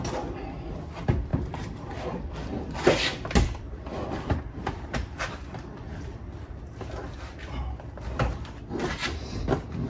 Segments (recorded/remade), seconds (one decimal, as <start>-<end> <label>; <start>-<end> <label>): 0.0-1.3 recorded; 1.3-1.9 remade; 1.9-3.9 recorded; 3.9-6.7 remade; 6.7-9.9 recorded